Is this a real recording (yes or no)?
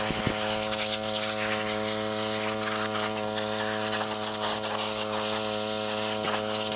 yes